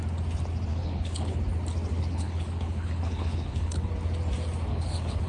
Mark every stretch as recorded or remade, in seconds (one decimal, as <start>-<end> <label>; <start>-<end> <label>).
0.0-0.7 recorded; 0.7-1.4 remade; 1.4-1.9 recorded; 1.9-3.9 remade; 3.9-4.7 recorded; 4.7-5.3 remade